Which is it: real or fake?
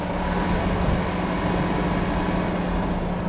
real